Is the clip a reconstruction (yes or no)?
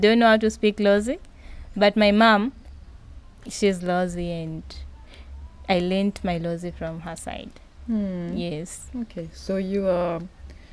no